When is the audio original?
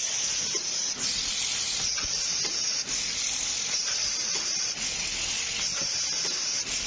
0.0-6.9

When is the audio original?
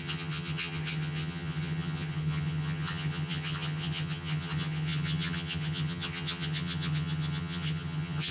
none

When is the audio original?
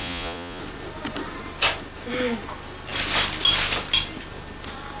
0.6-5.0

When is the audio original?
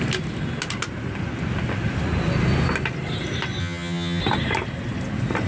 0.0-3.6; 4.2-5.5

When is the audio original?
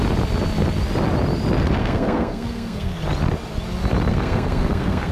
0.0-1.8; 3.0-4.1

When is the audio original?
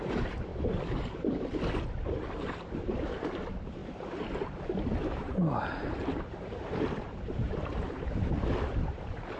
1.5-2.1; 3.8-5.0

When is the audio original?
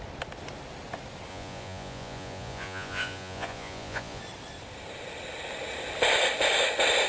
0.0-1.3; 4.2-7.1